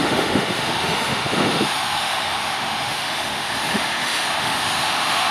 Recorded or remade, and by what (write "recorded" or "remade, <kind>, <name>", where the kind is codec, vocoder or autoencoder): remade, autoencoder, DAC-VAE